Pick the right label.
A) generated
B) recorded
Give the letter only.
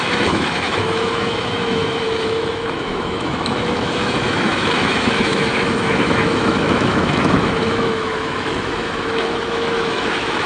A